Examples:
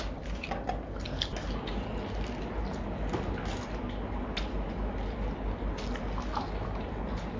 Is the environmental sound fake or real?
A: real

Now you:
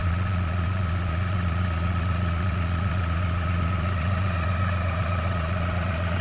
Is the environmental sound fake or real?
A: fake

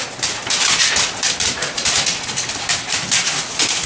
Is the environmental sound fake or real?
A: real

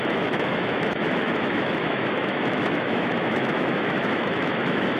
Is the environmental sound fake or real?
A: fake